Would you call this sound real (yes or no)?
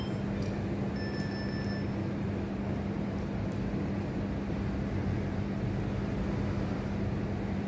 yes